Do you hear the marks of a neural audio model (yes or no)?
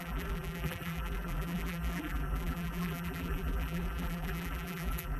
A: yes